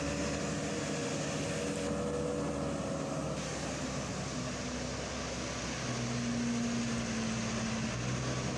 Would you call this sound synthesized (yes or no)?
no